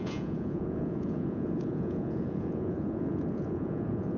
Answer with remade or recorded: remade